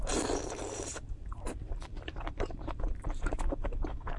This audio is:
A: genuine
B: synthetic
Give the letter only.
B